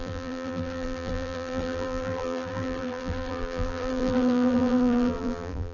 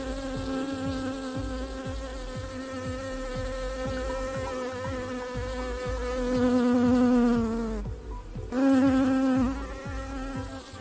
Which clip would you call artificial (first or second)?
first